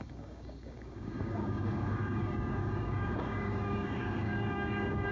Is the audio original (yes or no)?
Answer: no